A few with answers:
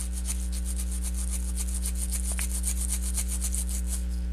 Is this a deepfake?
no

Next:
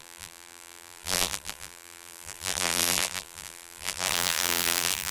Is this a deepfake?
yes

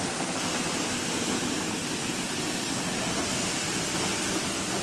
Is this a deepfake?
no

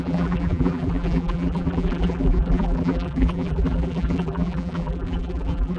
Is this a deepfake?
yes